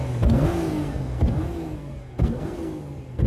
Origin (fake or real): fake